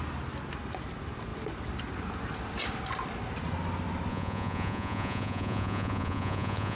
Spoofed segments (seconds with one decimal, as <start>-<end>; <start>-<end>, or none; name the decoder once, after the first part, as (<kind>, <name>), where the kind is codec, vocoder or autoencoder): 4.1-6.8 (vocoder, Vocos)